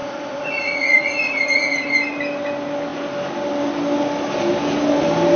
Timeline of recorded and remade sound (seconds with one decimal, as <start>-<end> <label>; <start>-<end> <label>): 0.0-1.9 remade; 1.9-5.4 recorded